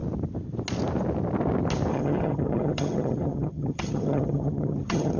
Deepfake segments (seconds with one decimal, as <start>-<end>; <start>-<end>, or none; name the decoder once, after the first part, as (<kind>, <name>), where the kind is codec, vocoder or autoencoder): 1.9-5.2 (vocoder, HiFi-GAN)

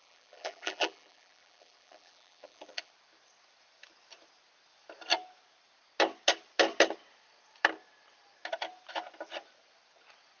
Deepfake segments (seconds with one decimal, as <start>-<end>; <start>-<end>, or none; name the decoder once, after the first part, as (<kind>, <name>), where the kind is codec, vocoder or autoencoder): 0.0-2.9 (vocoder, BigVGAN v2)

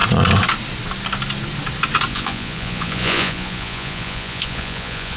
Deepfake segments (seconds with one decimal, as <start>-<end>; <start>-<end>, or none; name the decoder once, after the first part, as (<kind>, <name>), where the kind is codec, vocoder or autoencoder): 2.1-5.2 (vocoder, Vocos)

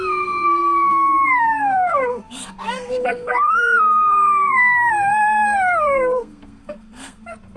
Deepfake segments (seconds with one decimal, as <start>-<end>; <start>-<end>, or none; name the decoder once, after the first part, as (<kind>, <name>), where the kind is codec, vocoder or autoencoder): 0.0-7.6 (codec, SNAC)

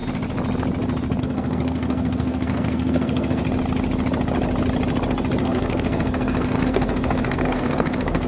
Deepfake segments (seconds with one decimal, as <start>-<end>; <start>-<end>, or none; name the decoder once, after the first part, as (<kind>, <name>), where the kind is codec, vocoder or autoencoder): 1.2-3.4 (codec, SNAC); 5.4-8.3